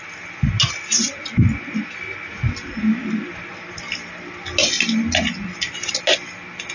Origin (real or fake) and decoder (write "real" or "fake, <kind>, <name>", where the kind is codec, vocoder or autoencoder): real